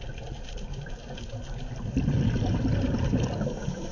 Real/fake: real